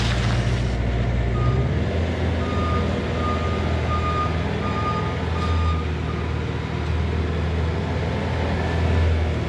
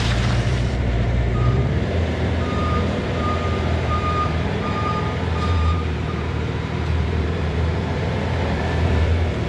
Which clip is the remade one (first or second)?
second